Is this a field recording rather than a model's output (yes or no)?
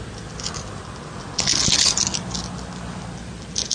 yes